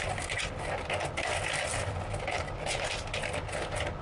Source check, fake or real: real